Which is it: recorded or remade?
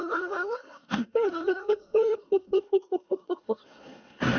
remade